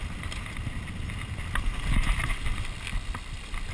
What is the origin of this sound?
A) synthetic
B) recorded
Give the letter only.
B